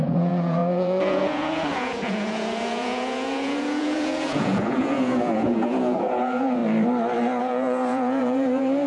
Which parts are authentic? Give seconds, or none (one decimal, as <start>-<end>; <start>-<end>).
6.6-7.4